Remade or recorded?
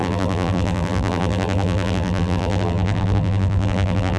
remade